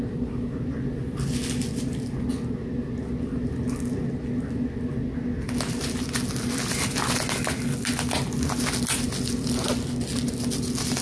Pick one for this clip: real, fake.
real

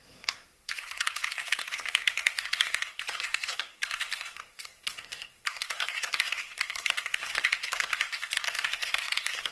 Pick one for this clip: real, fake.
fake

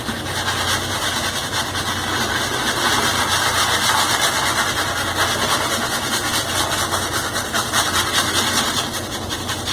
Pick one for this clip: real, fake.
real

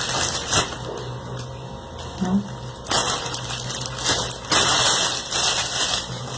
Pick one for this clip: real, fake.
real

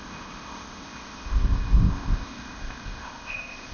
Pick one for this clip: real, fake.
fake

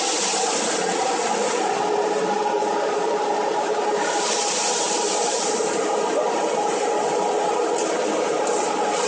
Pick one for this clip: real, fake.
fake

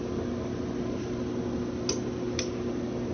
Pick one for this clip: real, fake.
real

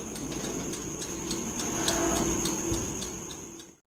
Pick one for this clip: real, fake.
real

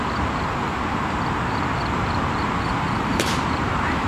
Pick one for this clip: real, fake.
fake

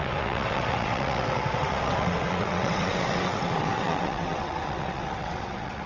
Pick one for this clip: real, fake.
fake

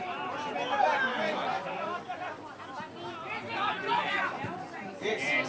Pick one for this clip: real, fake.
real